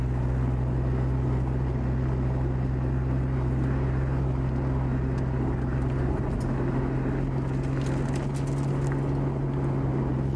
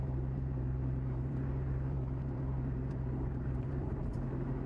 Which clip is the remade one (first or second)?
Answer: second